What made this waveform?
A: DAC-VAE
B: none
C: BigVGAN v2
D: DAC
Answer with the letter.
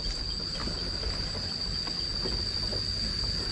B